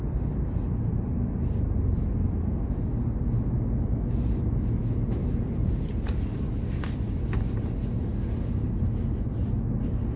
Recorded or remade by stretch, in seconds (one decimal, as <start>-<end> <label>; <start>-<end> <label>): 0.0-10.2 recorded